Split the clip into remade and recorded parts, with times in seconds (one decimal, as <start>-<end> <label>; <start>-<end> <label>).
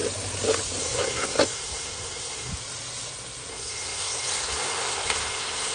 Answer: 0.0-0.8 recorded; 0.8-2.5 remade; 2.5-3.5 recorded; 3.5-5.7 remade